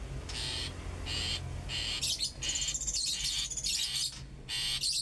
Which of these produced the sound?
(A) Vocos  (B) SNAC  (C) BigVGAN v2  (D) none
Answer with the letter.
D